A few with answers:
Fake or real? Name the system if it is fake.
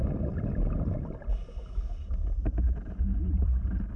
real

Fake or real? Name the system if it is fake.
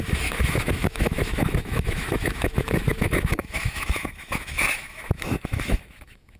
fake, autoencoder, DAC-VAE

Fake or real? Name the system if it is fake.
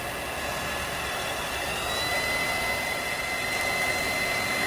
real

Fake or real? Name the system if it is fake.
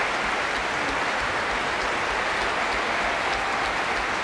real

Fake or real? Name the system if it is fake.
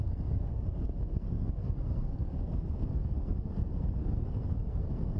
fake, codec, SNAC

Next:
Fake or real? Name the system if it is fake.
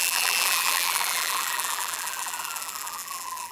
fake, vocoder, BigVGAN v2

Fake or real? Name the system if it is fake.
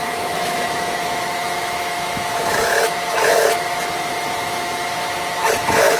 fake, autoencoder, DAC-VAE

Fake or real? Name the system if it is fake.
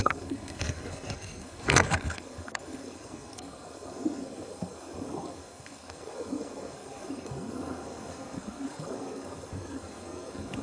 fake, codec, SNAC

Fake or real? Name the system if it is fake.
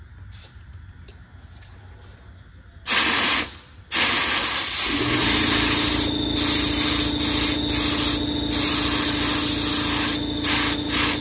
real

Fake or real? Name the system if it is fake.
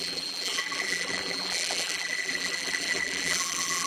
fake, vocoder, BigVGAN v2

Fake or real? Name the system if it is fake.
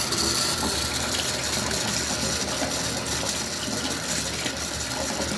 real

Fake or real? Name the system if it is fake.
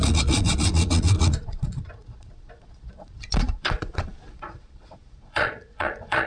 fake, vocoder, Vocos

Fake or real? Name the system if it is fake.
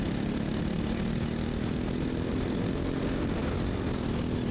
real